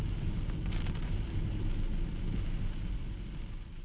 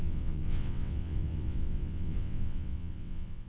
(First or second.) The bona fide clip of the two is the first